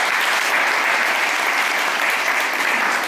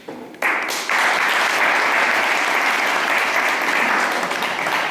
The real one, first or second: second